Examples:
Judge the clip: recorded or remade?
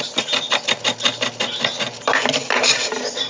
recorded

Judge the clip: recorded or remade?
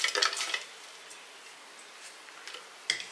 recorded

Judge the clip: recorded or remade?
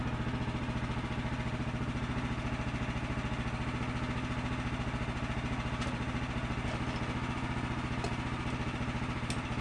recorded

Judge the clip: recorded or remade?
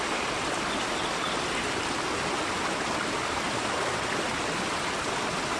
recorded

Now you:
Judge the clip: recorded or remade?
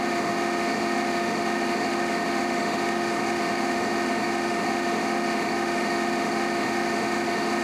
remade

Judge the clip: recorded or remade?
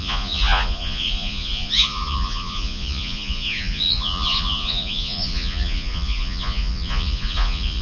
remade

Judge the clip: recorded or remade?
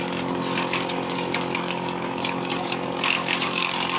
remade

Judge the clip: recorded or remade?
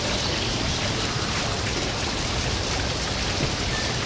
recorded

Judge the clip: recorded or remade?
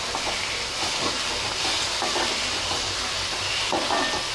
recorded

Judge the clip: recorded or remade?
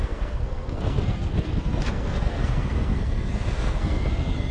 remade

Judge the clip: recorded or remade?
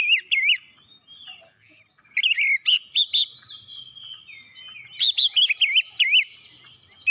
recorded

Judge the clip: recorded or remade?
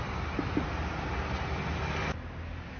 recorded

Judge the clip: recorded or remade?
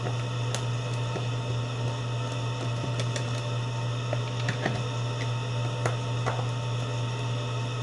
recorded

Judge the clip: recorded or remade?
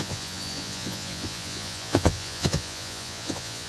remade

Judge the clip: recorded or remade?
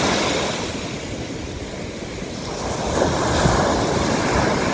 recorded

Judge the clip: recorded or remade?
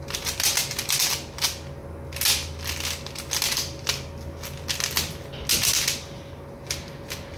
recorded